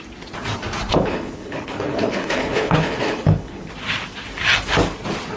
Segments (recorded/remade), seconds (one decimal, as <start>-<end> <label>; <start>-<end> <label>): 0.0-0.9 recorded; 0.9-3.7 remade; 3.7-5.4 recorded